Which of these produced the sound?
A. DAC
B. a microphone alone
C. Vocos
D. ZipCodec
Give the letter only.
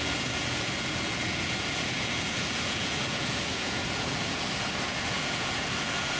C